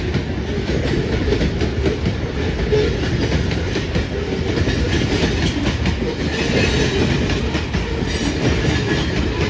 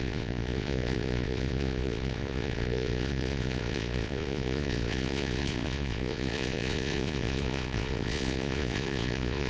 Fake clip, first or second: second